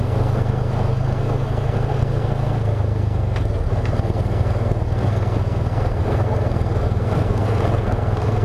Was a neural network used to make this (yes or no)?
yes